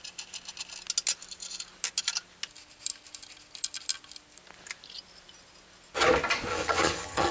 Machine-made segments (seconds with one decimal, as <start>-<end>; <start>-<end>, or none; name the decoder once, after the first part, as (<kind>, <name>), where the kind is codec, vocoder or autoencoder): 6.5-7.3 (vocoder, HiFi-GAN)